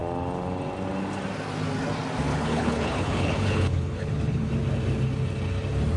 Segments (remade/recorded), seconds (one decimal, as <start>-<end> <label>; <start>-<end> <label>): 0.0-2.3 recorded; 2.3-4.5 remade; 4.5-6.0 recorded